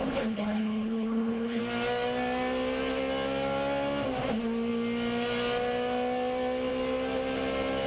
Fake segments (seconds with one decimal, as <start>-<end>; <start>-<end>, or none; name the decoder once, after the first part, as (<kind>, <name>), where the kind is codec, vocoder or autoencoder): 0.0-1.6 (codec, HILCodec)